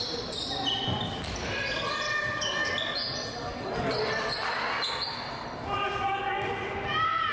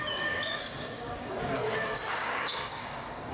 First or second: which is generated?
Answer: second